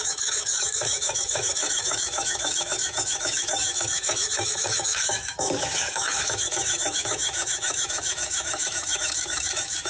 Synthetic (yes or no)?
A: yes